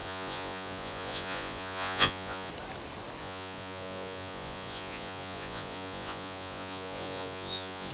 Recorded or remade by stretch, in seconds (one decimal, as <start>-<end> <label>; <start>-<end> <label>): 0.0-2.5 remade; 2.5-3.2 recorded; 3.2-7.9 remade